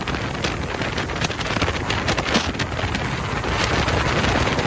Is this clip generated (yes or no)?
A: no